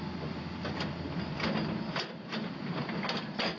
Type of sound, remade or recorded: recorded